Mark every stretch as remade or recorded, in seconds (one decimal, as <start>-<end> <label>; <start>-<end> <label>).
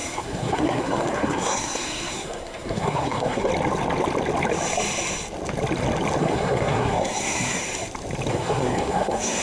0.0-3.5 remade; 3.5-6.2 recorded; 6.2-7.6 remade; 7.6-8.3 recorded; 8.3-9.4 remade